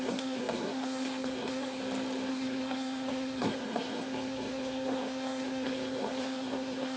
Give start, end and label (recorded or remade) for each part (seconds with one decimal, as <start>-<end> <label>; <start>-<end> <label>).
0.0-1.8 remade; 1.8-2.3 recorded; 2.3-7.0 remade

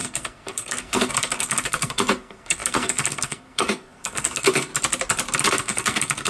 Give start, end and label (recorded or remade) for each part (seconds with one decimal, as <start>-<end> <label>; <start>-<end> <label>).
0.0-4.7 remade; 4.7-5.5 recorded; 5.5-6.3 remade

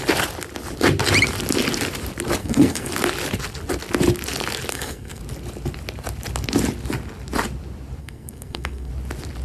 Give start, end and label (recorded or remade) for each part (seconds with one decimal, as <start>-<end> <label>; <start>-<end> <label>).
0.0-2.4 recorded; 2.4-2.9 remade; 2.9-4.7 recorded; 4.7-5.2 remade; 5.2-8.0 recorded; 8.0-8.9 remade; 8.9-9.4 recorded

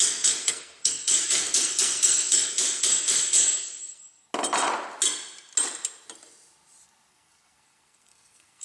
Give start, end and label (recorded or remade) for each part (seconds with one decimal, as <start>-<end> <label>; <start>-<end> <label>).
0.0-4.3 remade; 4.3-7.1 recorded; 7.1-8.6 remade

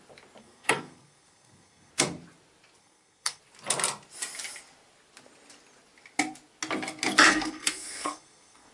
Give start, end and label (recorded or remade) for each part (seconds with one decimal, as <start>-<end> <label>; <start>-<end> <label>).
0.0-0.4 recorded; 0.4-1.9 remade; 1.9-2.8 recorded; 2.8-3.4 remade; 3.4-7.3 recorded; 7.3-8.7 remade